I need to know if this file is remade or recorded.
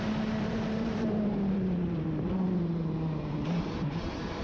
remade